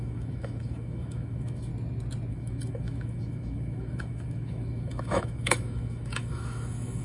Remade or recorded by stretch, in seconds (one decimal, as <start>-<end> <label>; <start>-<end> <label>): 0.0-1.7 remade; 1.7-2.3 recorded; 2.3-7.0 remade